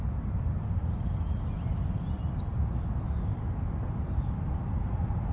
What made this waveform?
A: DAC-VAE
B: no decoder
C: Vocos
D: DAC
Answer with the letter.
B